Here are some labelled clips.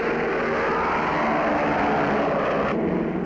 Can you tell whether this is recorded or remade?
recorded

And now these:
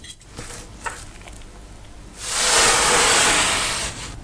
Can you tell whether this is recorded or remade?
recorded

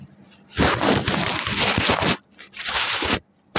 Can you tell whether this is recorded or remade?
recorded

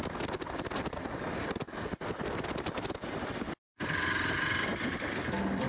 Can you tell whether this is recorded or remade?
recorded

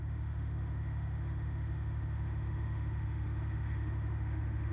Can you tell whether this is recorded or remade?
remade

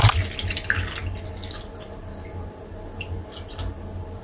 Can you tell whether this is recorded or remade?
recorded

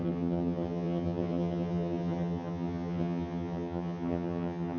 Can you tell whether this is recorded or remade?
remade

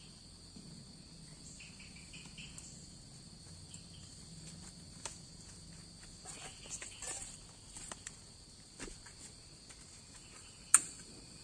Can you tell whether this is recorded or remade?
recorded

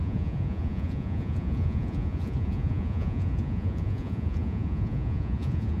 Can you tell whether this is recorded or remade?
remade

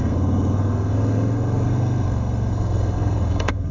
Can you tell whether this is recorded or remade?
remade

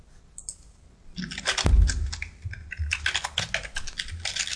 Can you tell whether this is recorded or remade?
recorded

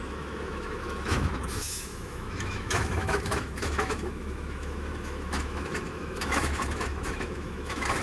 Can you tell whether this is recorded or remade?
remade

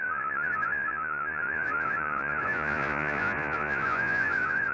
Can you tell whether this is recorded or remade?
remade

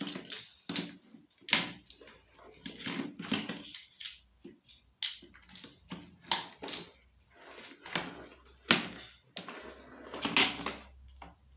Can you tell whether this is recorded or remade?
recorded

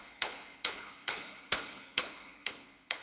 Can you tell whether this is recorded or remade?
remade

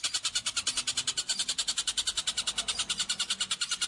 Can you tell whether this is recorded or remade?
recorded